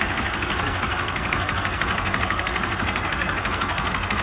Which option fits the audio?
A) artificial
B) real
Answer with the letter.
A